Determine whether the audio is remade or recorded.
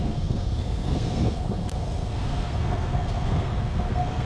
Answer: remade